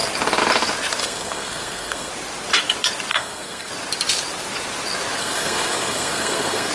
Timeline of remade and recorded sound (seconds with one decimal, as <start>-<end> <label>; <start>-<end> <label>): 0.0-1.0 recorded; 1.0-2.1 remade; 2.1-3.1 recorded; 3.1-3.7 remade; 3.7-5.2 recorded; 5.2-6.7 remade